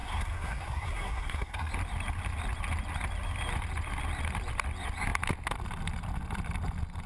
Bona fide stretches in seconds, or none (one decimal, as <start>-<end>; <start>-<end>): 1.7-7.1